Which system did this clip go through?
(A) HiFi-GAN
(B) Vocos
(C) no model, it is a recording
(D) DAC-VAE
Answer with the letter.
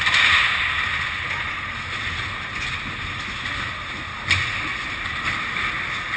C